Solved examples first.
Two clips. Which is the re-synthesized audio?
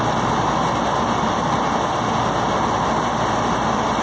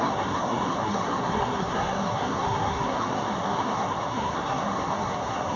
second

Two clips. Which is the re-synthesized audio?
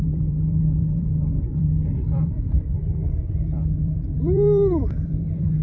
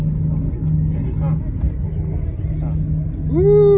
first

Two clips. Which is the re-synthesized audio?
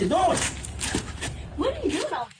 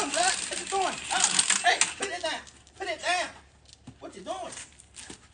first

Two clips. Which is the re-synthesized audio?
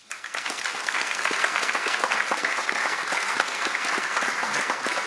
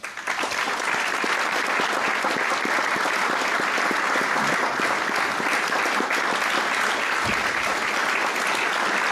first